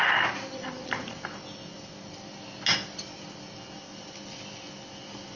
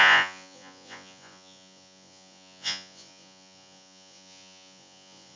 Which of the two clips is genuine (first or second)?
first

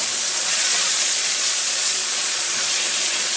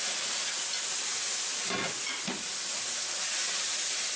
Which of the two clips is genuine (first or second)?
second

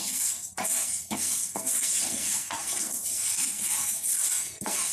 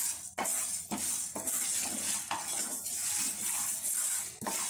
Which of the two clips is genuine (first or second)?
second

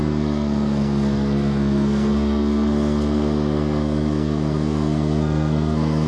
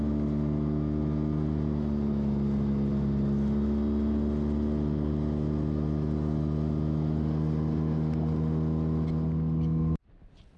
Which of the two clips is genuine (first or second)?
second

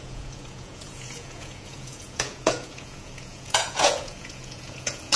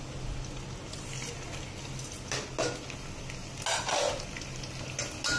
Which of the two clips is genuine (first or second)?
second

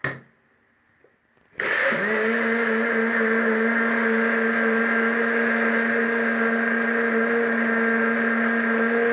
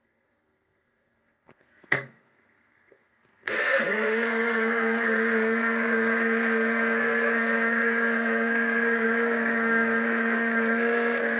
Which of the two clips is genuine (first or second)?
first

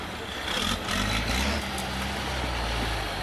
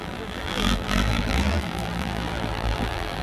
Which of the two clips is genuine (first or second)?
first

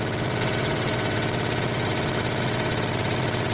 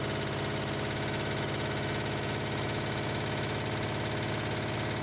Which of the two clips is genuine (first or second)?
second